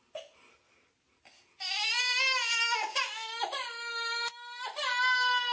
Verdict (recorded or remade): recorded